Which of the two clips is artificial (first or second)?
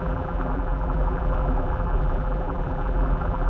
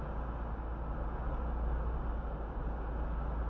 first